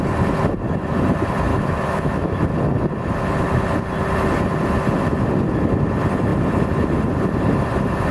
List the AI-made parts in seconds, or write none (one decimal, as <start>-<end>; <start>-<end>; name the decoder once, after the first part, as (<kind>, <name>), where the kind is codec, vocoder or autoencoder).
1.5-2.4 (autoencoder, DAC-VAE)